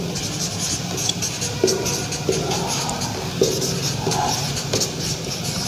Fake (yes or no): no